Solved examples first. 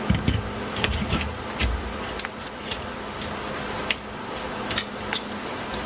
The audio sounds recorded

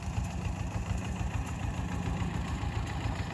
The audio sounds remade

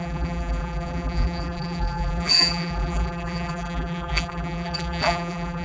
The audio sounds remade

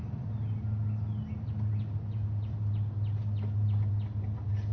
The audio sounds recorded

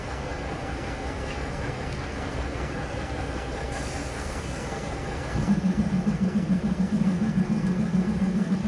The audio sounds remade